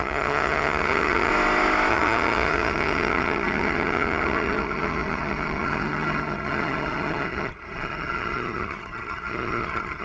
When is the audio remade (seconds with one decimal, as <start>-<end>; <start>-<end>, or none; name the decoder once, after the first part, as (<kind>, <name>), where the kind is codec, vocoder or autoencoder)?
0.0-1.3 (vocoder, HiFi-GAN); 1.9-10.0